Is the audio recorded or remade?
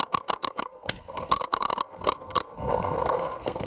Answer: remade